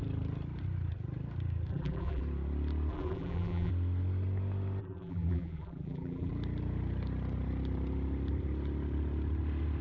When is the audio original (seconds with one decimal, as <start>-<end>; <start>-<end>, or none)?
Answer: 0.0-1.7; 2.2-2.9; 3.7-4.8; 6.3-9.8